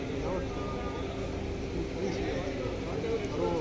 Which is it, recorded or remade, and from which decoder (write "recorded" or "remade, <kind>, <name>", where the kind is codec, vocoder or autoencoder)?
recorded